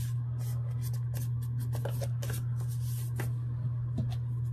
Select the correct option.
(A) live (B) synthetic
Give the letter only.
A